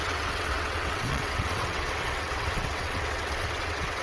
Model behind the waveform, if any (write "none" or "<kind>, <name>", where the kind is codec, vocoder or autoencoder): vocoder, WaveNeXt